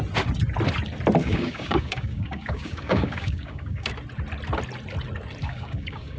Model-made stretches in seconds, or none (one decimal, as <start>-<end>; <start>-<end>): 1.2-3.9; 5.4-6.2